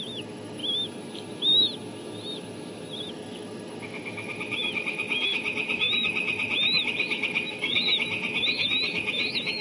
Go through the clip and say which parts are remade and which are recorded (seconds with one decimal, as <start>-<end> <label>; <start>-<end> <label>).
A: 0.0-0.6 remade; 0.6-3.1 recorded; 3.1-9.6 remade